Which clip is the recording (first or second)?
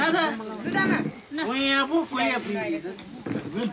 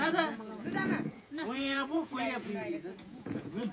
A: first